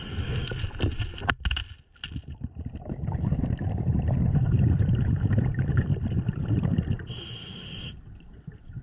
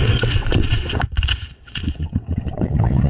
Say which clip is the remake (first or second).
second